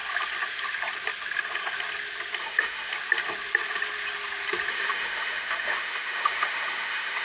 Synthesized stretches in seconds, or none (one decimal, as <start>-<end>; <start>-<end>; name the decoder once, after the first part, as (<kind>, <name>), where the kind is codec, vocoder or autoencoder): 2.4-2.9 (autoencoder, DAC-VAE); 4.7-7.2